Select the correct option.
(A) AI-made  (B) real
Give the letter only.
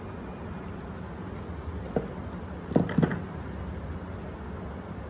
B